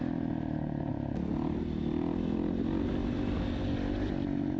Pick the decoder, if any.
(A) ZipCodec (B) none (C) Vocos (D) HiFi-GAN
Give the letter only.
B